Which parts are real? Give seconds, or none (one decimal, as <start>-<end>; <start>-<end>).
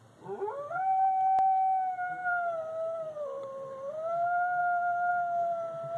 0.0-6.0